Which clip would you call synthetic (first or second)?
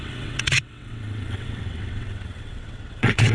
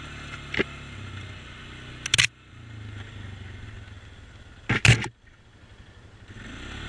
first